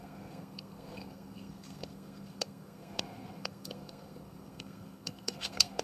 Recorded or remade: remade